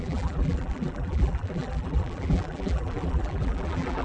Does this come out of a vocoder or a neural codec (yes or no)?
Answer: yes